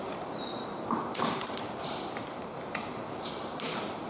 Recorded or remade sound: remade